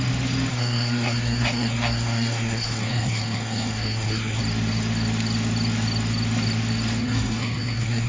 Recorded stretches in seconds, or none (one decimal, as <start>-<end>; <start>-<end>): 0.0-0.5; 4.4-7.0